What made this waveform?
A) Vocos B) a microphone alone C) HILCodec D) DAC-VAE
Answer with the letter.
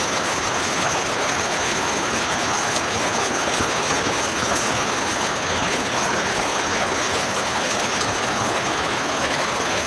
C